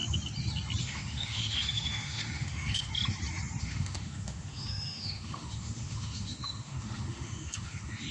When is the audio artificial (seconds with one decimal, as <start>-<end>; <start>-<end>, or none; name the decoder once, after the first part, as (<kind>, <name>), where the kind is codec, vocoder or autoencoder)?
0.8-2.9 (autoencoder, DAC-VAE); 3.6-8.1